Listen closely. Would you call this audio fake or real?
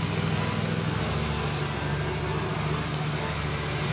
real